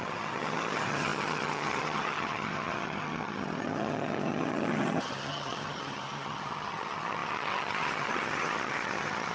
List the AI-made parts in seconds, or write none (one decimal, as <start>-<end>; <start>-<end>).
0.0-9.3